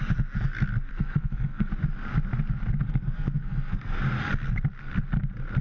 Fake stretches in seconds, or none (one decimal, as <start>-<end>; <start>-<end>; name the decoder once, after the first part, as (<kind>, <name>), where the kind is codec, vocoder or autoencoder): 0.9-1.7 (codec, SNAC); 2.8-4.0